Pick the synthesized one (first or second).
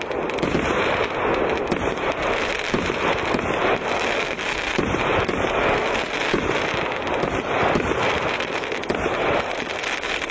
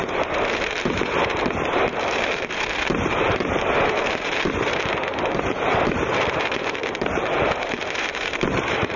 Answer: second